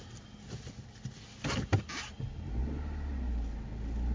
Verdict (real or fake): real